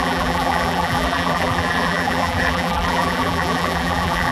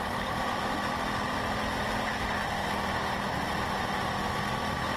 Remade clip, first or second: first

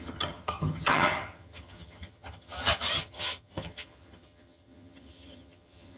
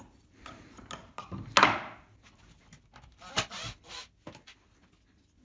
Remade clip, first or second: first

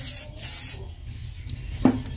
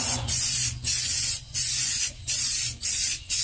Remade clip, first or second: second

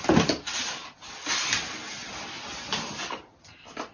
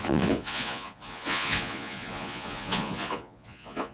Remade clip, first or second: second